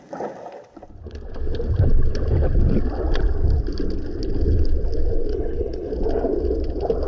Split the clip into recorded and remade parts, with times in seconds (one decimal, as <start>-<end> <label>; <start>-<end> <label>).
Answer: 0.0-5.3 recorded; 5.3-5.9 remade; 5.9-7.1 recorded